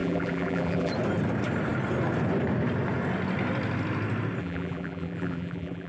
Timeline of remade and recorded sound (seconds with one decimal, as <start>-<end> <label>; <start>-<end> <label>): 0.0-0.9 remade; 0.9-4.4 recorded; 4.4-5.9 remade